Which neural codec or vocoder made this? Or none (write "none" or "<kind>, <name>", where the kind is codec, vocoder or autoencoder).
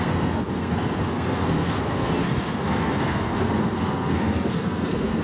codec, SNAC